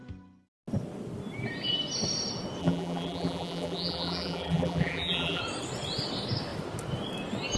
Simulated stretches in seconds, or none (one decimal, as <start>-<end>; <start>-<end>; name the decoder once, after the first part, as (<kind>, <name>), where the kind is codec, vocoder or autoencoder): 2.6-5.4 (vocoder, BigVGAN v2)

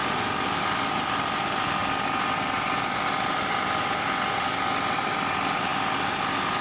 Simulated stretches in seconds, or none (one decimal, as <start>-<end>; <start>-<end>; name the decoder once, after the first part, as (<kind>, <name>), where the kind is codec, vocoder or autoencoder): none

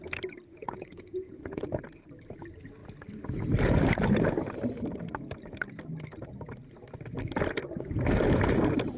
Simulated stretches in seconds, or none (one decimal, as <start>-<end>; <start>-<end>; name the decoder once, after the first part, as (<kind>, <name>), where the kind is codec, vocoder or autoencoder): 0.5-1.8 (vocoder, Vocos)

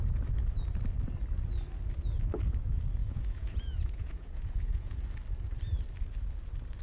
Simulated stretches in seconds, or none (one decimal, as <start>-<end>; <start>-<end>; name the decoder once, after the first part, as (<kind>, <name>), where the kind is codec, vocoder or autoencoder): 3.0-5.0 (vocoder, Vocos)

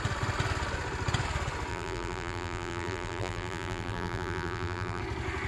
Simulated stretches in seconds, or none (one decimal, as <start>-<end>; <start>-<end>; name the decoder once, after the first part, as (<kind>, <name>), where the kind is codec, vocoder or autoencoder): 1.7-5.0 (vocoder, BigVGAN v2)

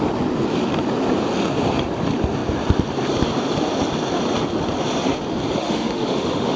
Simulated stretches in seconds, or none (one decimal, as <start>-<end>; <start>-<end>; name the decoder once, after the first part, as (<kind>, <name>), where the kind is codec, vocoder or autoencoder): 5.6-6.6 (autoencoder, DAC-VAE)

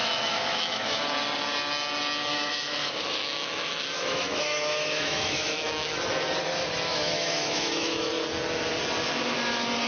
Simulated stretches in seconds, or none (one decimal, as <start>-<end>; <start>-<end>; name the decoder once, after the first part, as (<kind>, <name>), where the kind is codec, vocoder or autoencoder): 0.0-1.0 (autoencoder, DAC-VAE); 2.3-6.0; 6.9-8.1